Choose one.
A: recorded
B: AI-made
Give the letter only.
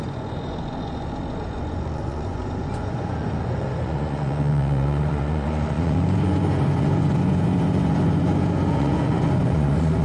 B